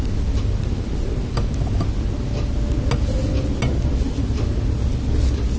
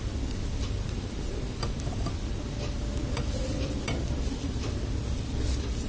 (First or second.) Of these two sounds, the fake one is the second